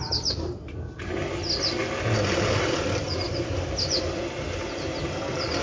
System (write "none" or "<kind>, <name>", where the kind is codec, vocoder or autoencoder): none